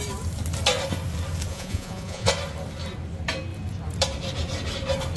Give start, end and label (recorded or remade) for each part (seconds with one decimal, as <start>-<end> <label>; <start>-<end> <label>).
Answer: 0.0-1.5 recorded; 1.5-2.3 remade; 2.3-5.2 recorded